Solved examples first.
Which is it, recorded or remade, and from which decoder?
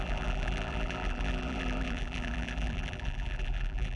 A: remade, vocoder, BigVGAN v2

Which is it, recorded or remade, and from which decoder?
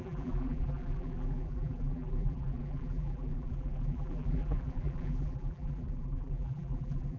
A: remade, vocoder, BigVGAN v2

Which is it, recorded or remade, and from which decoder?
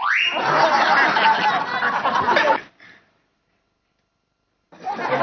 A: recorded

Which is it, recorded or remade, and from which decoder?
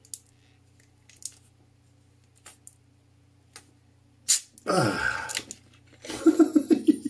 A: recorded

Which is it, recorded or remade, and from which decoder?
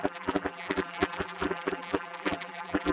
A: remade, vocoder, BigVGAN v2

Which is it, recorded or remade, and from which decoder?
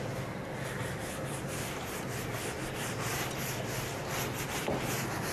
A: recorded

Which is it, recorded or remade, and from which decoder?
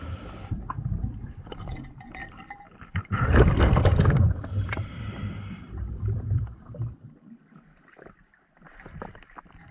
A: remade, vocoder, BigVGAN v2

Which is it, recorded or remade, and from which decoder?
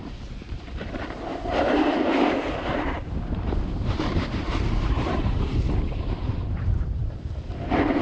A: remade, vocoder, BigVGAN v2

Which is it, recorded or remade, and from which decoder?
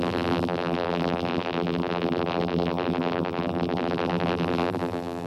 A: remade, vocoder, BigVGAN v2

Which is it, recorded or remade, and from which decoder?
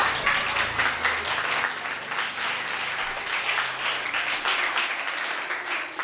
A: recorded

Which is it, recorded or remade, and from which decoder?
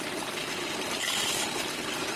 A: remade, vocoder, BigVGAN v2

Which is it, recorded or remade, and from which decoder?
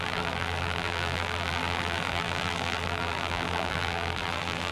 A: remade, vocoder, BigVGAN v2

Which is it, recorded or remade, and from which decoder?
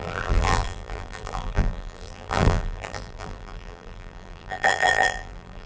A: remade, vocoder, BigVGAN v2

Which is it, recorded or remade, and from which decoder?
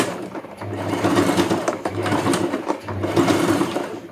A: remade, vocoder, BigVGAN v2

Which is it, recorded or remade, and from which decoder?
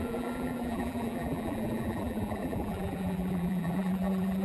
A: remade, vocoder, BigVGAN v2